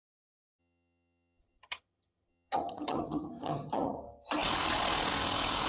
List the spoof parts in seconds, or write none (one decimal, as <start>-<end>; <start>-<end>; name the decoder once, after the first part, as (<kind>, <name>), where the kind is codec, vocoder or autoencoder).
0.6-4.0 (vocoder, HiFi-GAN)